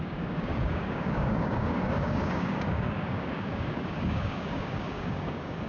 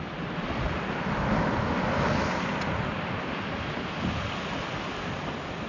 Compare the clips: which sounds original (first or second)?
second